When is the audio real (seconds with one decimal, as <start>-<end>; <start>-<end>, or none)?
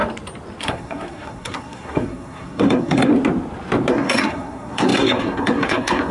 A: 0.0-0.6; 3.1-3.9